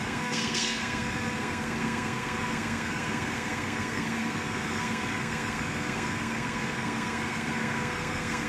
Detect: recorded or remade remade